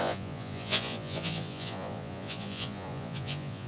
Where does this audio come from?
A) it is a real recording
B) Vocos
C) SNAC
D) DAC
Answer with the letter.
B